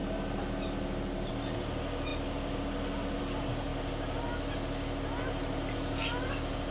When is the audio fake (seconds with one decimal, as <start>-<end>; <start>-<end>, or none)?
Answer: none

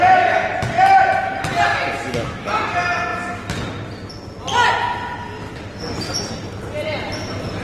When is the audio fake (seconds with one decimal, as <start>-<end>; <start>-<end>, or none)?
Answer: 1.7-2.5